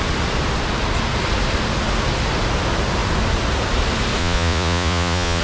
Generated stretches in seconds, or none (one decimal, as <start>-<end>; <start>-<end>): 4.2-5.4